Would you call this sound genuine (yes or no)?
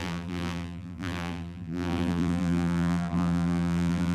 no